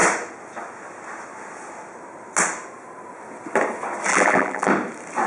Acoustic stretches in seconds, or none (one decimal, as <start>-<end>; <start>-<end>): 0.0-4.1; 4.7-5.3

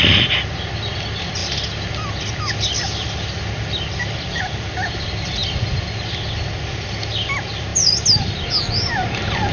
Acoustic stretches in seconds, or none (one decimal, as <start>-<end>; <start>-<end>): 0.0-9.5

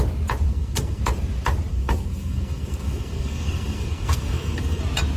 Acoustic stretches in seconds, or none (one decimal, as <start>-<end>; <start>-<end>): 0.0-0.5; 1.0-1.7; 4.8-5.2